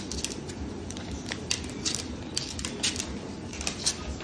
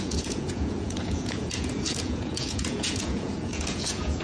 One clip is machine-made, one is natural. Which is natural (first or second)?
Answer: first